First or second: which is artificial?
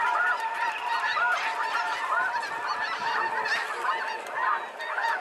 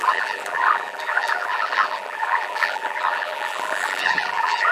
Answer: second